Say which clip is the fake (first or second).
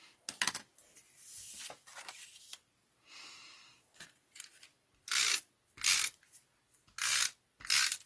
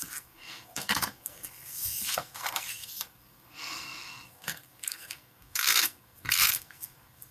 second